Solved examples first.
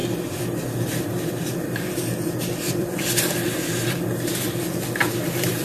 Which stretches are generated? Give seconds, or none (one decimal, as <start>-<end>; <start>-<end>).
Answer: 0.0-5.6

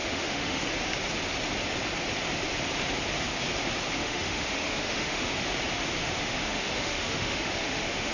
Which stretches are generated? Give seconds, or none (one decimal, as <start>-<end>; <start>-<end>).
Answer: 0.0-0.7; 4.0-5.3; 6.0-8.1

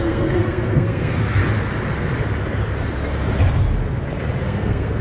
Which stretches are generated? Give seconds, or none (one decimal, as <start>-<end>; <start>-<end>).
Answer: 0.0-1.4; 4.4-5.0